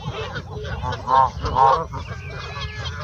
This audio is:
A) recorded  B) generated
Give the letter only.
A